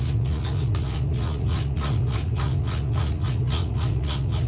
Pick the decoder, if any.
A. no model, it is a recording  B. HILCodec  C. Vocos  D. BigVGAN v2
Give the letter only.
C